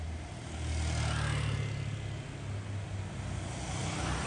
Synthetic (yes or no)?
no